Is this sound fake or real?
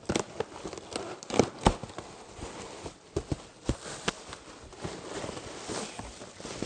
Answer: real